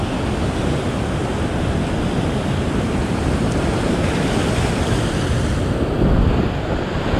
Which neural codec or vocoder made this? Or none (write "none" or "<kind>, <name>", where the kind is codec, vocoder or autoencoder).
none